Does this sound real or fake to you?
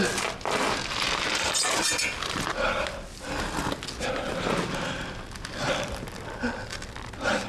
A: real